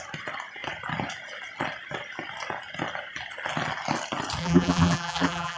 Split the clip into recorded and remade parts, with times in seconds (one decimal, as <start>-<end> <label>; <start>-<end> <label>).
0.0-4.4 recorded; 4.4-5.6 remade